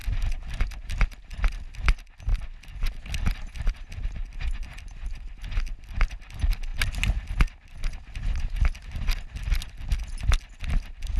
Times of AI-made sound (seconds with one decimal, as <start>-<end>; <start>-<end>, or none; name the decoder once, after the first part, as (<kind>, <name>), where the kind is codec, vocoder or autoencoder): none